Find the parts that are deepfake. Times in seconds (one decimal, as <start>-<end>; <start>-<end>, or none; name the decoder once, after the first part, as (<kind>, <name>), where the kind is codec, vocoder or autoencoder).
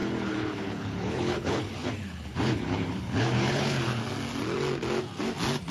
0.0-4.0 (codec, HILCodec)